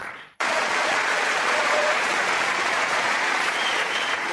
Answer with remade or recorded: remade